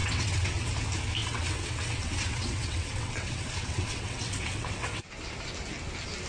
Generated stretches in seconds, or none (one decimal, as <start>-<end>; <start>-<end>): 0.0-0.7; 1.2-5.0

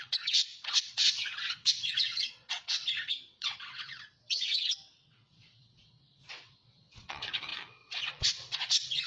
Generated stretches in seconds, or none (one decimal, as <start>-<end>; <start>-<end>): 0.0-9.1

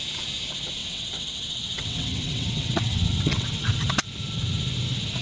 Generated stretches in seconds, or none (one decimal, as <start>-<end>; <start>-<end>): 0.8-3.9

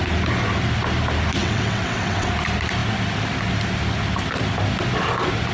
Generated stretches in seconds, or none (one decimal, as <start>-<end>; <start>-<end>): 1.4-2.3

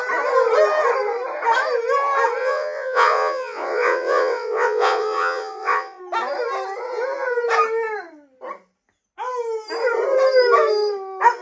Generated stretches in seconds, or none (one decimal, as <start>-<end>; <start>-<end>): 2.4-6.0

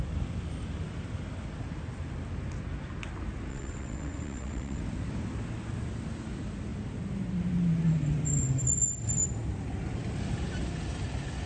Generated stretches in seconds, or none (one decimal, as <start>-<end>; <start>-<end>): 3.5-4.8

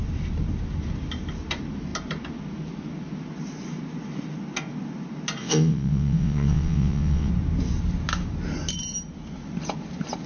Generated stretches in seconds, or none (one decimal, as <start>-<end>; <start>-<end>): 5.4-7.3

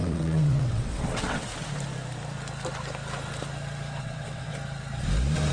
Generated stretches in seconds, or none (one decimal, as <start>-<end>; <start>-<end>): 0.0-1.5; 4.0-4.5